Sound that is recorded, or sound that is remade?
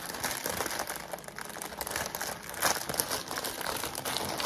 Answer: recorded